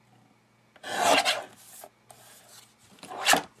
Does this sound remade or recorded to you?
recorded